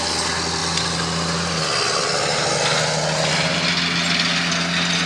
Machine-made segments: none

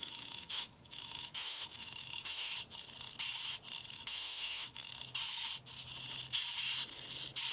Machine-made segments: 0.0-2.5; 3.9-4.9

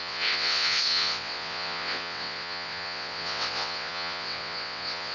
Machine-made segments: 0.0-5.1

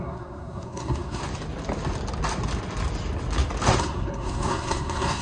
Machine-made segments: 0.0-1.2; 3.8-5.2